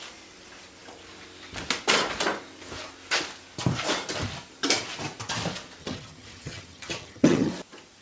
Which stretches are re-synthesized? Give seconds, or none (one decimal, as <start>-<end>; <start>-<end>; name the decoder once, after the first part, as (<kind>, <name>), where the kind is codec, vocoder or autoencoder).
5.8-7.5 (vocoder, HiFi-GAN)